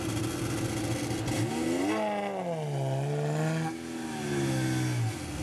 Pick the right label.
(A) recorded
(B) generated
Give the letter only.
A